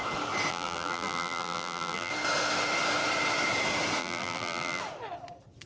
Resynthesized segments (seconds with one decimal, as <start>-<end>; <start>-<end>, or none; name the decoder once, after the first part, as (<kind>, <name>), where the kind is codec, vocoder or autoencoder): 0.5-2.1 (vocoder, BigVGAN v2); 4.0-4.8